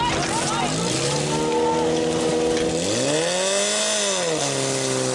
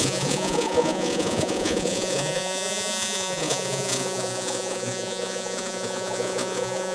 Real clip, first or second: first